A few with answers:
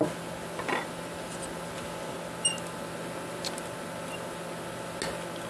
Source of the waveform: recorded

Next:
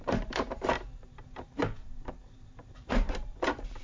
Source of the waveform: remade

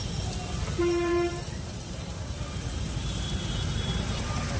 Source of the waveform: remade